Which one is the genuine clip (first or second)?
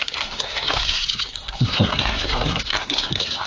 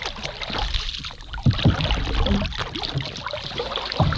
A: second